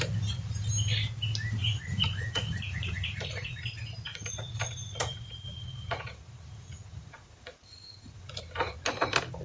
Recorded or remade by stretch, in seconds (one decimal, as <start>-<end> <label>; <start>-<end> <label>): 0.0-1.6 recorded; 1.6-3.6 remade; 3.6-4.1 recorded; 4.1-8.4 remade; 8.4-9.4 recorded